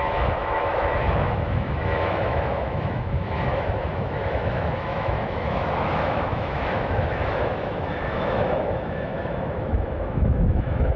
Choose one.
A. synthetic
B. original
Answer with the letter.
A